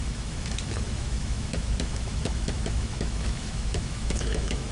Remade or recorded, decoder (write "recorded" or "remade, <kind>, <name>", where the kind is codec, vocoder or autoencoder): remade, autoencoder, DAC-VAE